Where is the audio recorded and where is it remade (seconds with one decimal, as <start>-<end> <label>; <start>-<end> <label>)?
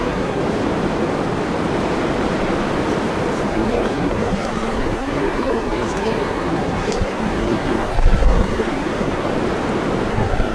0.0-0.4 remade; 0.4-3.5 recorded; 3.5-9.3 remade; 9.3-10.1 recorded; 10.1-10.5 remade